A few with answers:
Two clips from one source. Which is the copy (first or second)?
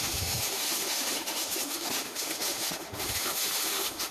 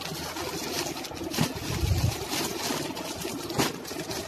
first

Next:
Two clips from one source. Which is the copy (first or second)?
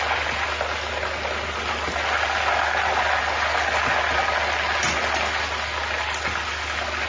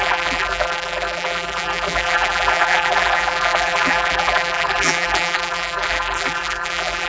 second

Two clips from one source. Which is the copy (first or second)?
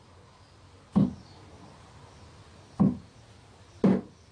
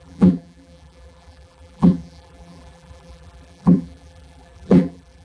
second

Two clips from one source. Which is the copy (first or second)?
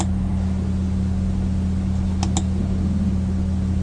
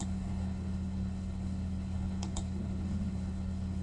second